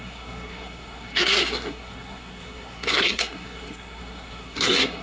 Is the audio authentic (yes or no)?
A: no